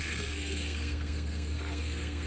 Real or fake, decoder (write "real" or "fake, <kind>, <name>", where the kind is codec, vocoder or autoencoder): fake, codec, SNAC